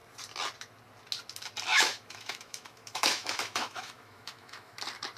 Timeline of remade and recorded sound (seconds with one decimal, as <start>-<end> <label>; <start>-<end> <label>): 0.0-1.7 recorded; 1.7-4.7 remade; 4.7-5.2 recorded

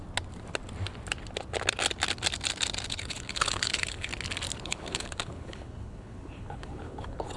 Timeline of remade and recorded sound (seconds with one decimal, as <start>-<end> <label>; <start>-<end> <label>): 0.0-2.9 recorded; 2.9-4.1 remade; 4.1-4.6 recorded; 4.6-7.4 remade

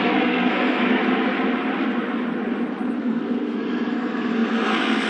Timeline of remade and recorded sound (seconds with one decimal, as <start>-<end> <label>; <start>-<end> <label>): 0.0-1.0 remade; 1.0-3.0 recorded; 3.0-5.1 remade